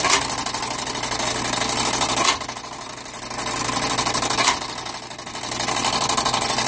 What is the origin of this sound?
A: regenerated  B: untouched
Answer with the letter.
B